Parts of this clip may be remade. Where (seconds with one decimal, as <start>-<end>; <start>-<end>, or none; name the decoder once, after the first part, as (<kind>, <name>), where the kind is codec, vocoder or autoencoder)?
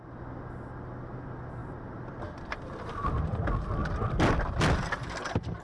1.6-3.3 (vocoder, BigVGAN v2); 3.8-4.7